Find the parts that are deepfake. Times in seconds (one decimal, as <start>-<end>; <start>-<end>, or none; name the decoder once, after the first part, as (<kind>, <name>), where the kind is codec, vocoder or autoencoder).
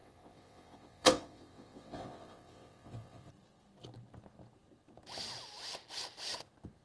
0.0-3.3 (vocoder, WaveNeXt)